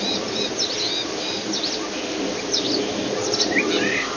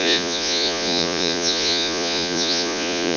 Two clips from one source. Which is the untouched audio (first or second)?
first